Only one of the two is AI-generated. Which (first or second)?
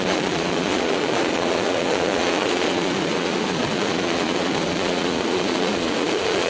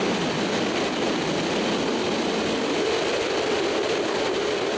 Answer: first